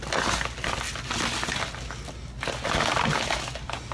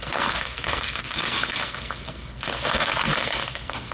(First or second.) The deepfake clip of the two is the second